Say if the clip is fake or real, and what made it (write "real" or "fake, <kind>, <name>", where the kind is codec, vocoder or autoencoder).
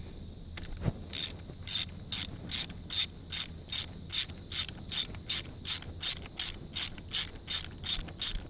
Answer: real